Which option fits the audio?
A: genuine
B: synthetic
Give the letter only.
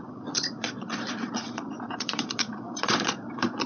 B